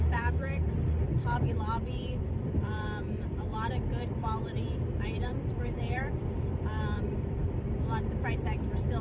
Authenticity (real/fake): fake